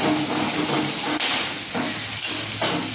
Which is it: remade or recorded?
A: recorded